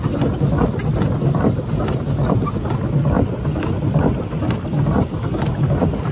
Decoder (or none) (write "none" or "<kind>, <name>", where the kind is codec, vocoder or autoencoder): none